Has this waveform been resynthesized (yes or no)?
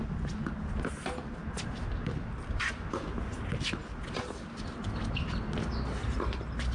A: no